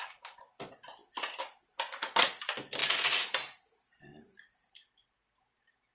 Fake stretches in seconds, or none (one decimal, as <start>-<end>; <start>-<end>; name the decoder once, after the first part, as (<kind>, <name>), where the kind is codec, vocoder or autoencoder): 0.0-1.0 (vocoder, BigVGAN v2); 2.2-5.9